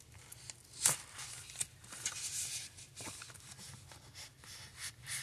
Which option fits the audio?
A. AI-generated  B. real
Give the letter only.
B